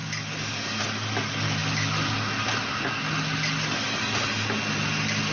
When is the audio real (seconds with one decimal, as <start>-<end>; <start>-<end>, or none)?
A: 0.0-5.3